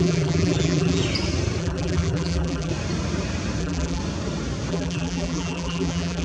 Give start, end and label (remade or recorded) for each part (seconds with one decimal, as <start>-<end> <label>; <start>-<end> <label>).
0.0-1.0 remade; 1.0-1.6 recorded; 1.6-2.7 remade; 2.7-3.6 recorded; 3.6-4.0 remade; 4.0-4.7 recorded; 4.7-6.2 remade